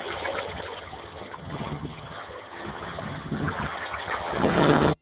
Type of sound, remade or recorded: remade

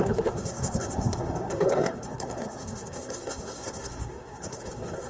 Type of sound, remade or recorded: remade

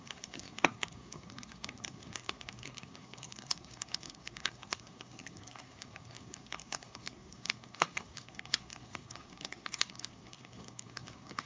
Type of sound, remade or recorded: remade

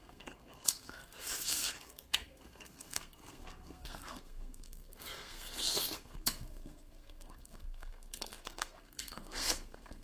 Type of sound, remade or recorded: remade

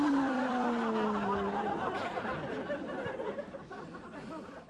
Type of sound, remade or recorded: remade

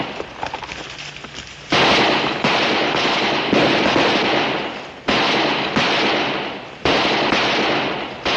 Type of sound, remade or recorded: recorded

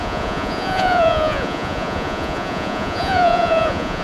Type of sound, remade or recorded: remade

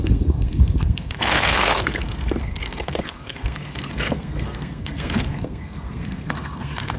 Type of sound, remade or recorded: remade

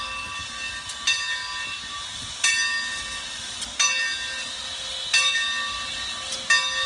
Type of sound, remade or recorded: recorded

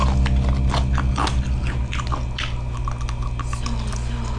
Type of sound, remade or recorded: recorded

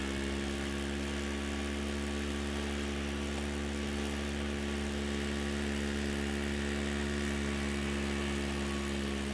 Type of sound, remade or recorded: recorded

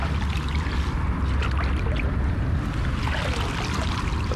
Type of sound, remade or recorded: recorded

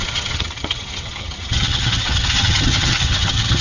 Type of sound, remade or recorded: remade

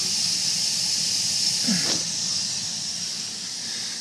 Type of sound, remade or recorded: recorded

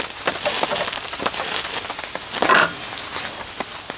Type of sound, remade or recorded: recorded